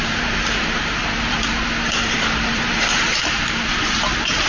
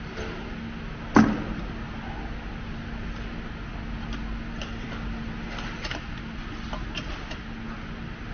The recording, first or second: second